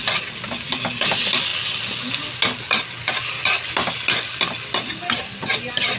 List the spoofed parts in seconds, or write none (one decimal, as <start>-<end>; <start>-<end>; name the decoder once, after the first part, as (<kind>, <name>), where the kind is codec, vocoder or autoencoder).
none